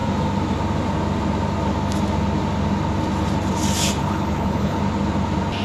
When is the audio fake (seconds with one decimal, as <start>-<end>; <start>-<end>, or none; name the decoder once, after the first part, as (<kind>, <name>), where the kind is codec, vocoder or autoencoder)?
4.0-4.8 (codec, HILCodec)